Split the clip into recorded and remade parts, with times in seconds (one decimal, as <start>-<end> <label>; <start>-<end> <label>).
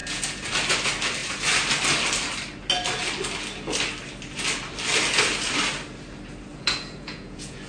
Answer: 0.0-0.5 remade; 0.5-6.5 recorded; 6.5-7.7 remade